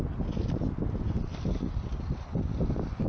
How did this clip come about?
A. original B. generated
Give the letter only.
A